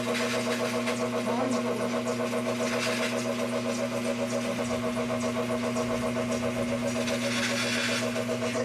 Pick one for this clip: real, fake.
real